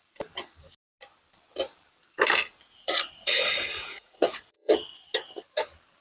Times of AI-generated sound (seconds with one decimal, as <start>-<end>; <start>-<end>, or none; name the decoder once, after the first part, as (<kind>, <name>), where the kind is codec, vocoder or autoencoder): 2.5-4.7 (vocoder, Vocos)